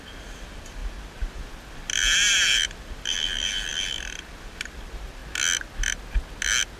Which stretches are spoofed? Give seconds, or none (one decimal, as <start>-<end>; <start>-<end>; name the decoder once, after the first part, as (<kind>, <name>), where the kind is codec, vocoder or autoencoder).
0.0-5.2 (vocoder, BigVGAN v2)